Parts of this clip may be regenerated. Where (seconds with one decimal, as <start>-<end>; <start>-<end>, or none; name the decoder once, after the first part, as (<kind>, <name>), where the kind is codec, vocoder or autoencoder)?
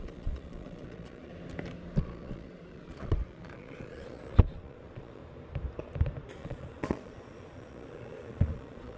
0.0-1.3 (vocoder, Vocos); 2.0-5.2; 6.3-9.0